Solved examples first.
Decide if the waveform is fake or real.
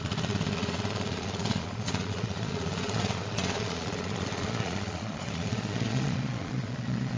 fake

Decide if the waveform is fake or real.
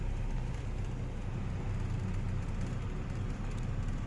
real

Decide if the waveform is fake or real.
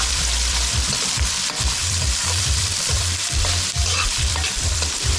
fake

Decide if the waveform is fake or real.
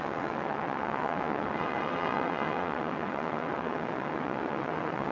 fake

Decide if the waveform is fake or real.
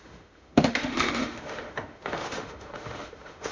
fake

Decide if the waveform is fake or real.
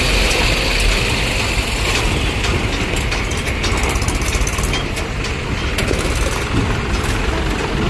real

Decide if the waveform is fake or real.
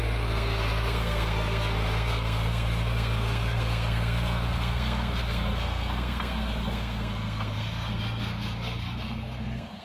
fake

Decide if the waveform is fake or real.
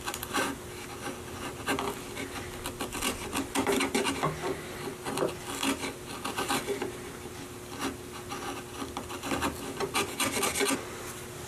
real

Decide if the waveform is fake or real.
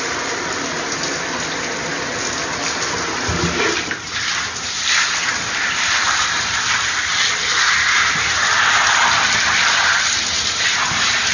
real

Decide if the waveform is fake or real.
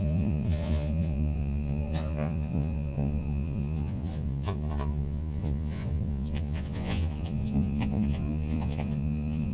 fake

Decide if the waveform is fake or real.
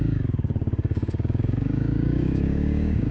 fake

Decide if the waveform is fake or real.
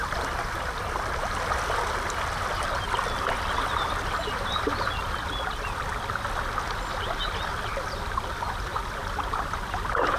real